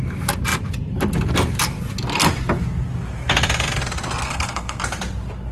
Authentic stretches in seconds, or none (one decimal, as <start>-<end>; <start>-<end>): 0.0-4.2; 4.8-5.5